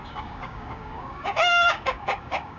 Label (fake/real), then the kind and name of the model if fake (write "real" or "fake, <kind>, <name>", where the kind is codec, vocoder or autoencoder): fake, codec, DAC